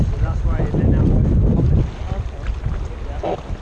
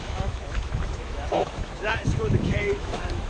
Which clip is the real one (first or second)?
first